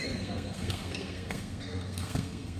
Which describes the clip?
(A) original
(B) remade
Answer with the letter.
B